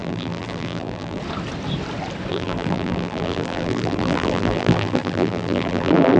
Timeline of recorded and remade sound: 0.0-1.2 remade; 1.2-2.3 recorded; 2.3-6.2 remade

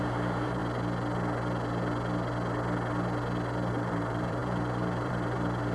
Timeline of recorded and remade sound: 0.0-0.6 remade; 0.6-3.7 recorded; 3.7-5.7 remade

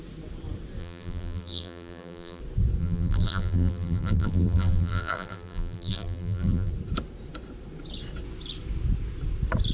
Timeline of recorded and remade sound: 0.0-0.8 recorded; 0.8-2.4 remade; 2.4-2.8 recorded; 2.8-6.7 remade; 6.7-9.7 recorded

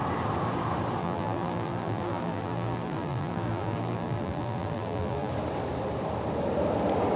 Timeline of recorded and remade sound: 0.0-1.0 recorded; 1.0-5.3 remade; 5.3-7.2 recorded